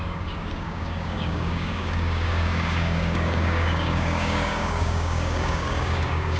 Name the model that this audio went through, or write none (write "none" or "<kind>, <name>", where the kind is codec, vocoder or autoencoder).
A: codec, DAC